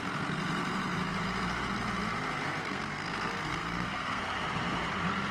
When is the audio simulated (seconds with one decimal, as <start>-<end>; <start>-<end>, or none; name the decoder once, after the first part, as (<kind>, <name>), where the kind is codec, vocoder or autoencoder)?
2.6-4.2 (codec, SNAC)